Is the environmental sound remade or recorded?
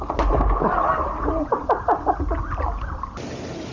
recorded